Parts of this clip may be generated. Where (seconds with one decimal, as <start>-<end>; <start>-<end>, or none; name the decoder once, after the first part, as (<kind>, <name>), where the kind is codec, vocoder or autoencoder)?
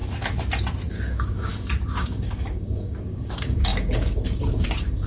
0.9-1.5 (codec, DAC); 2.0-5.1